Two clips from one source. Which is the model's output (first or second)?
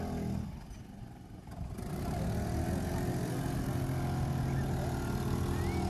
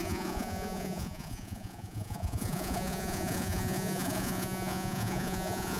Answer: second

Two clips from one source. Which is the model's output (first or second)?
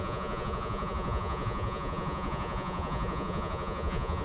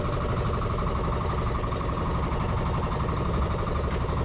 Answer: first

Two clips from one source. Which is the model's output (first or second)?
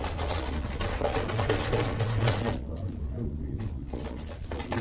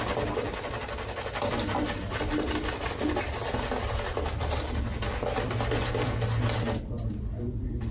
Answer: first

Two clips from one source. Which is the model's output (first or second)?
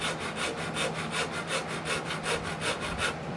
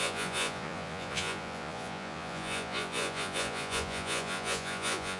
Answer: second